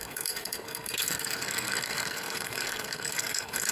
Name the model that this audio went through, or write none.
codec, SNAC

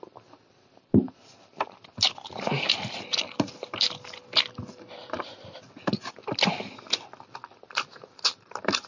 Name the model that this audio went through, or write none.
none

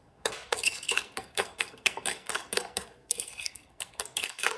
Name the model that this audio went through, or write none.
codec, SNAC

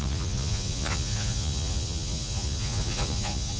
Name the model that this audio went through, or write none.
vocoder, Vocos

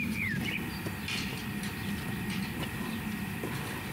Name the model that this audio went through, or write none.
none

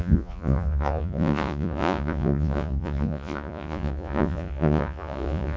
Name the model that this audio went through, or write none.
vocoder, Vocos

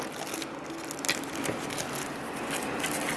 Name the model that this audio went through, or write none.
none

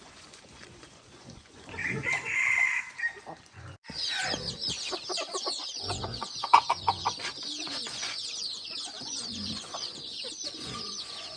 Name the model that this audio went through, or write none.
vocoder, Vocos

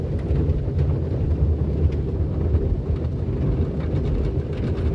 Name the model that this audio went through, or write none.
none